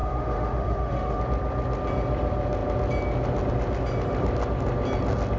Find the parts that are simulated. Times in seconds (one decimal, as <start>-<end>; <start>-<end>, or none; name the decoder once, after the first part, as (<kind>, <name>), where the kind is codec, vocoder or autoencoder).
0.0-1.2 (autoencoder, DAC-VAE)